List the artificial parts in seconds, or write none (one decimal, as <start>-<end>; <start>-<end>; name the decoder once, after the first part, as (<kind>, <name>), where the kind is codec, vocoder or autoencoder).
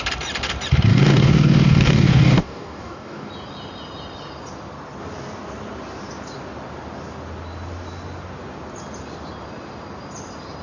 0.9-3.3 (codec, DAC)